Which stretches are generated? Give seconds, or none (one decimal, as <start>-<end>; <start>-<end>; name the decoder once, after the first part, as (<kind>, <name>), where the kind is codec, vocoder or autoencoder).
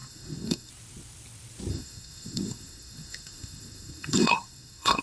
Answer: 0.0-0.7 (codec, SNAC); 1.7-5.0